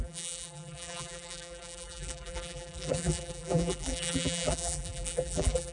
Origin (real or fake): fake